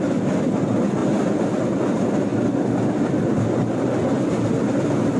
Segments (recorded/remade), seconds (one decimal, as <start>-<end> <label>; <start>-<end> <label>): 0.0-5.2 recorded